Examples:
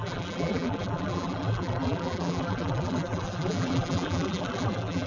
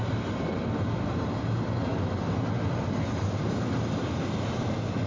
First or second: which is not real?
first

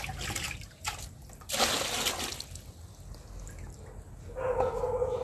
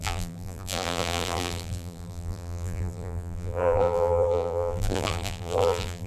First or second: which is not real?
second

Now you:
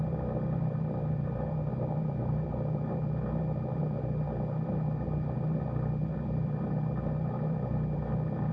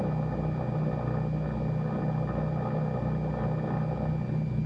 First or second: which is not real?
first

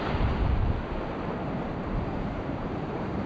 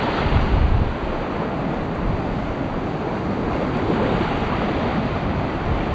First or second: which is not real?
first